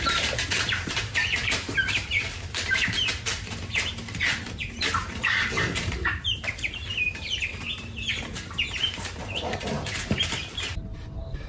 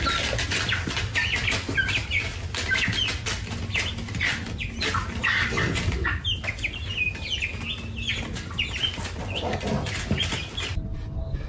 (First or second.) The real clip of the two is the second